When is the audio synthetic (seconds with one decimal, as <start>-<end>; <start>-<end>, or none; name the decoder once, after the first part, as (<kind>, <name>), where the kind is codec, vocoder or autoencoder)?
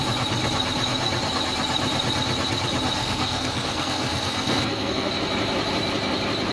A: 3.0-5.1 (codec, SNAC)